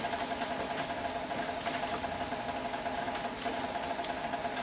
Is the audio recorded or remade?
recorded